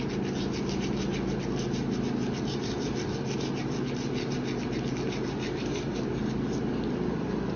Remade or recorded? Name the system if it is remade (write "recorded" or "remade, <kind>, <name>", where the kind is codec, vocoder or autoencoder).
recorded